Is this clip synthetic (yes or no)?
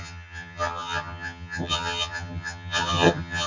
yes